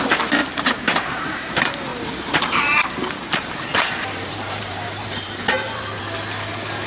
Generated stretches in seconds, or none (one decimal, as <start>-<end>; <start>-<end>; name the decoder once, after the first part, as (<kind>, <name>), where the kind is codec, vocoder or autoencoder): 0.4-1.5 (vocoder, BigVGAN v2); 1.9-6.0

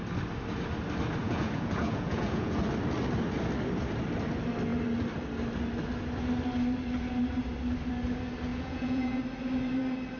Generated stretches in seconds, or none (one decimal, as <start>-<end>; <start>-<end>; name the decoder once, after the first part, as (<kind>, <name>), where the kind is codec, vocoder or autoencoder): 1.2-2.6 (vocoder, Vocos); 8.5-9.2

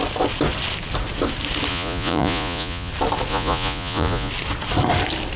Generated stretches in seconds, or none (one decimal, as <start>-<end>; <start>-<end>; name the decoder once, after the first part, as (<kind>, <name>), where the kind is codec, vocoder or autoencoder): 1.7-2.9 (vocoder, Vocos); 3.3-4.3